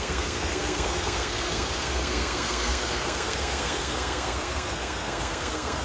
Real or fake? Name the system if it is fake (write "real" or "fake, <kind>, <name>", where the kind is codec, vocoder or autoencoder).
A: fake, codec, SNAC